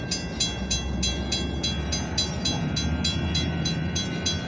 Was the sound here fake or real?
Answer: real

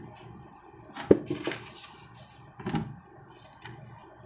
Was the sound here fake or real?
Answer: real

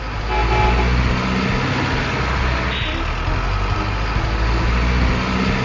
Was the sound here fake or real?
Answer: real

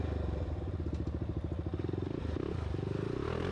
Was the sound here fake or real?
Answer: real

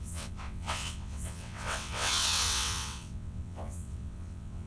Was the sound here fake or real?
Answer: fake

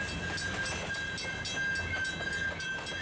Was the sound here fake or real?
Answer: real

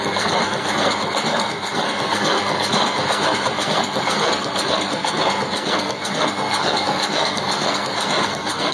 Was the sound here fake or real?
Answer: fake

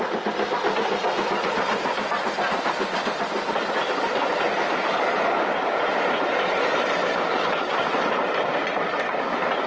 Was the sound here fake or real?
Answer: real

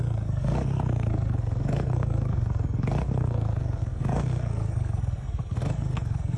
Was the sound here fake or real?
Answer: fake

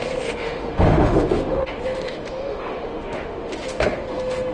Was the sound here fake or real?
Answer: fake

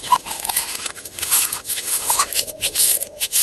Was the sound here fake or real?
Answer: fake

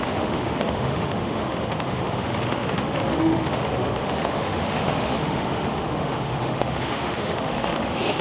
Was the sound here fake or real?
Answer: fake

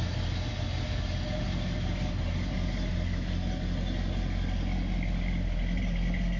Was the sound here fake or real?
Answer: real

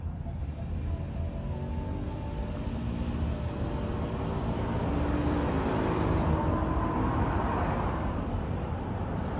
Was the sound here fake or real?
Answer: real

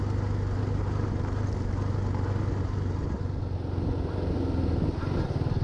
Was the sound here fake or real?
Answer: real